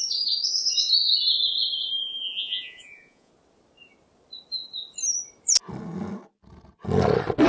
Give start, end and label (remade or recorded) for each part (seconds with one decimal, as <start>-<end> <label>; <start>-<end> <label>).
0.0-2.0 recorded; 2.0-3.3 remade; 3.3-7.5 recorded